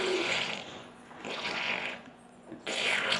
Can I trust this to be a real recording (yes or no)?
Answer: no